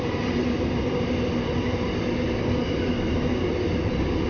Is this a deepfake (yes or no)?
no